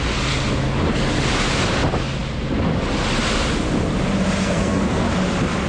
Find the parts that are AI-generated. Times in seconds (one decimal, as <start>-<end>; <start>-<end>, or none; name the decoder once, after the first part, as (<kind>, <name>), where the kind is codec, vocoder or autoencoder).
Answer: 4.4-5.1 (codec, SNAC)